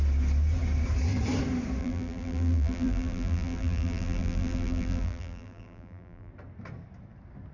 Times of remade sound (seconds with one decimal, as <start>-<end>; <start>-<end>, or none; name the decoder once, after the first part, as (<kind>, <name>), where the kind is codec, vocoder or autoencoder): 1.8-6.3 (vocoder, BigVGAN v2)